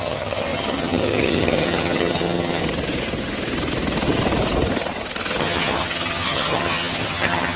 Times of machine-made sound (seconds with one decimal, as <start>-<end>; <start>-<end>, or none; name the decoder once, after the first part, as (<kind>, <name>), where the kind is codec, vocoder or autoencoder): 0.0-2.6 (vocoder, HiFi-GAN); 5.4-7.6